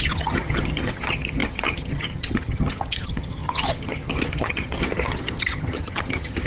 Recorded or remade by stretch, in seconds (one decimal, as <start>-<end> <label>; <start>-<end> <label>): 0.0-6.5 remade